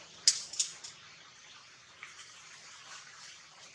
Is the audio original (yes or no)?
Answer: yes